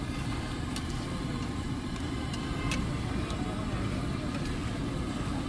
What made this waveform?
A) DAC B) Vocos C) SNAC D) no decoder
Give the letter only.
D